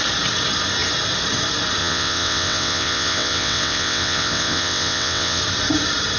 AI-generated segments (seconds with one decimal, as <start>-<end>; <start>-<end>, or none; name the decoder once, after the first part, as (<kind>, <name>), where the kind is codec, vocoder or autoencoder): 1.8-5.4 (vocoder, WaveNeXt)